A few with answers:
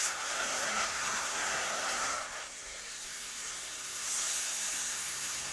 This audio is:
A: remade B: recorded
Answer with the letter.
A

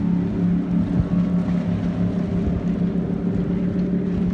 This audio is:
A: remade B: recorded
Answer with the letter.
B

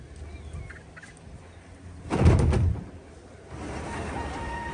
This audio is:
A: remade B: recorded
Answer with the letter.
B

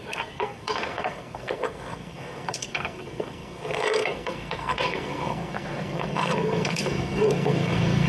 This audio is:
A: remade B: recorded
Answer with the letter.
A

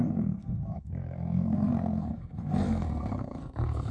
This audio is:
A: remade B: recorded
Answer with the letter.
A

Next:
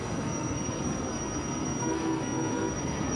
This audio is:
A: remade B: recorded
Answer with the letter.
A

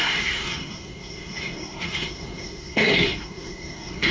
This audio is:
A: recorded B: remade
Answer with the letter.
B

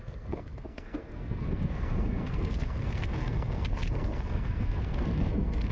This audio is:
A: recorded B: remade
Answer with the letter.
B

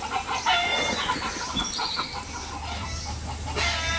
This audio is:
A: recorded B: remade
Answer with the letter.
A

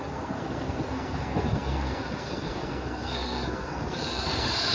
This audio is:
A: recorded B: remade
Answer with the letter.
B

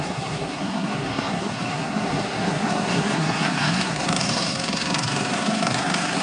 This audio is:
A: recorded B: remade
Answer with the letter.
B